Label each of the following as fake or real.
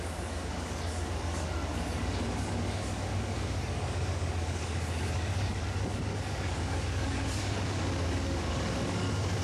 fake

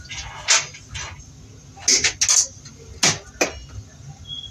real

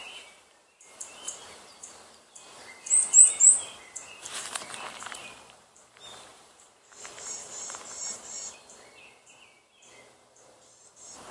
fake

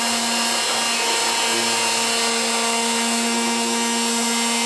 real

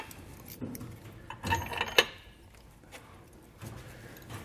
real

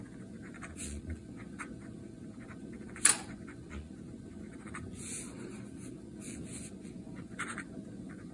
fake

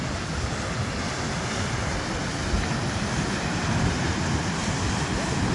real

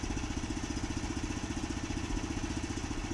real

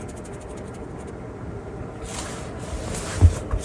real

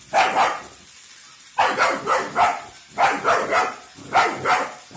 real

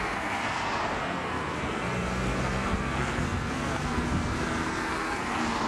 fake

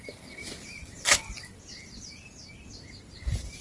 fake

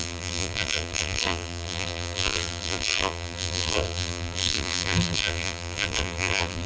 fake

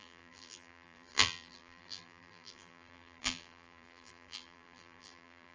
fake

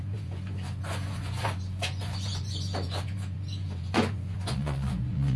fake